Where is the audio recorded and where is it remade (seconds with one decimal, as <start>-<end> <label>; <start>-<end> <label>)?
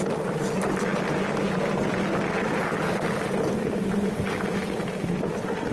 0.0-5.7 recorded